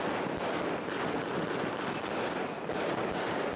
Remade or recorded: recorded